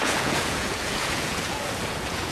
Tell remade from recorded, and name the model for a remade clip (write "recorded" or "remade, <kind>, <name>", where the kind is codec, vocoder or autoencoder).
remade, vocoder, Vocos